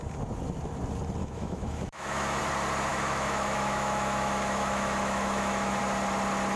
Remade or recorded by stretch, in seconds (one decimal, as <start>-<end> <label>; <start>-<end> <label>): 0.0-1.2 recorded; 1.2-2.4 remade; 2.4-2.9 recorded; 2.9-5.8 remade; 5.8-6.6 recorded